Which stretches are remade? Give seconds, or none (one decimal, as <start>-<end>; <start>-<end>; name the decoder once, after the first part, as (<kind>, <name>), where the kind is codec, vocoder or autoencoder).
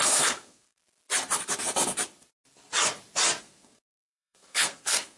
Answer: 0.0-0.8 (codec, SNAC); 3.4-5.2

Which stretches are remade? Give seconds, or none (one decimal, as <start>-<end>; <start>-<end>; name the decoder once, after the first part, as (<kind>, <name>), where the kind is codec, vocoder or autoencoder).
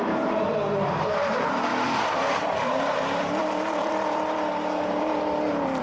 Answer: 1.7-5.2 (vocoder, BigVGAN v2)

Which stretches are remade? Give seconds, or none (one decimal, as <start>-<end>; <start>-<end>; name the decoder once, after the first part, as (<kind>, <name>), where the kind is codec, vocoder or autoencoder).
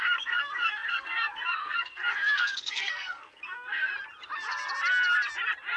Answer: 0.0-3.9 (codec, SNAC)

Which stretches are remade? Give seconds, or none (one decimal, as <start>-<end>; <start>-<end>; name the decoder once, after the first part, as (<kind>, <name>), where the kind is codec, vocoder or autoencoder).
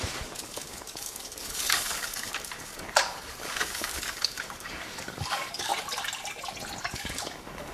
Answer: 0.0-5.7 (codec, DAC); 6.8-7.7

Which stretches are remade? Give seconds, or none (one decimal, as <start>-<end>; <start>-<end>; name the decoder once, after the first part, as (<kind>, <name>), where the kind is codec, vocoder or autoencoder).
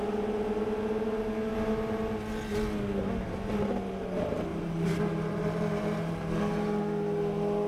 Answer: 4.5-6.8 (vocoder, BigVGAN v2)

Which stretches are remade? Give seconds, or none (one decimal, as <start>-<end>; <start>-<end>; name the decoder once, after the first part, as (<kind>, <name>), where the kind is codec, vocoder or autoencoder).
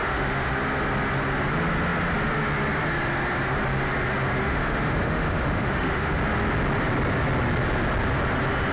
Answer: 0.0-0.5 (autoencoder, DAC-VAE); 4.4-6.2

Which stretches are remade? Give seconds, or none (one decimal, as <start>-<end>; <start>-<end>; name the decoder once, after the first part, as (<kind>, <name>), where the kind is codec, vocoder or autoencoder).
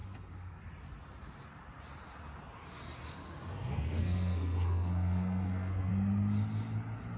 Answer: 0.0-0.6 (codec, SNAC); 3.5-5.9